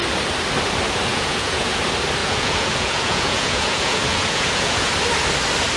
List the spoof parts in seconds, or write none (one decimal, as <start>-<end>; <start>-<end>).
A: 1.1-1.8; 2.2-4.9